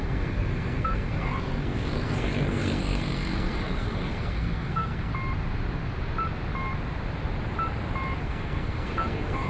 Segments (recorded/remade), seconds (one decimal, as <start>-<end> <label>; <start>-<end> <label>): 0.0-5.1 remade; 5.1-8.2 recorded; 8.2-9.5 remade